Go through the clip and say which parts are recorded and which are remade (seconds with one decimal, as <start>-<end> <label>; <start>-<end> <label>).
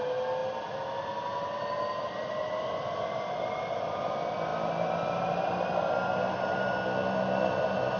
0.0-8.0 recorded